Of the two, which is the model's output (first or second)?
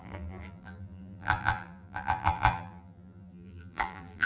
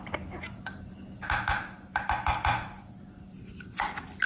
first